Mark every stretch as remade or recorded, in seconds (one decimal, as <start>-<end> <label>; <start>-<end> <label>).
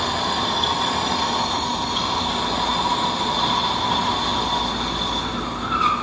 0.0-6.0 recorded